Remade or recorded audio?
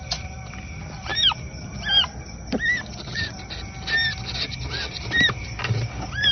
recorded